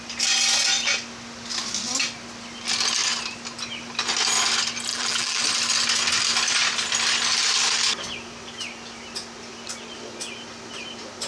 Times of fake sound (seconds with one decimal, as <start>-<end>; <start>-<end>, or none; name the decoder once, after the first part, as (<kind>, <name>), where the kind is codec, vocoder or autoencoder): 4.9-5.4 (vocoder, BigVGAN v2)